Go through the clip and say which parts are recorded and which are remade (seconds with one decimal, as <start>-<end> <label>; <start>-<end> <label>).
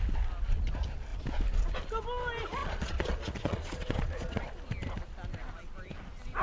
0.0-2.6 recorded; 2.6-4.4 remade; 4.4-6.4 recorded